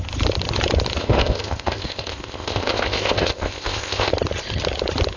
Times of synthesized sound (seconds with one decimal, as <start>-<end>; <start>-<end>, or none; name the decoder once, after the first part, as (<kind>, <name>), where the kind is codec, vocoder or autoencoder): 1.0-4.1 (codec, ZipCodec)